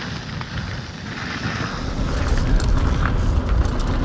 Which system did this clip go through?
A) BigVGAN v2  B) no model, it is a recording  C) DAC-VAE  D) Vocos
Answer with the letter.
B